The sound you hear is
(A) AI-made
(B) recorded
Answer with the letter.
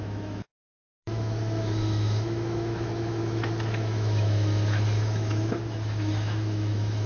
A